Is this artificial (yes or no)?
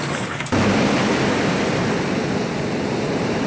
yes